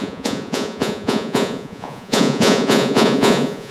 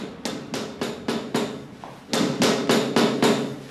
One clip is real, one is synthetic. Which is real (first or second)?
second